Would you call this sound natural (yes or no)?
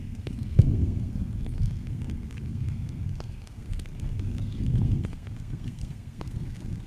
no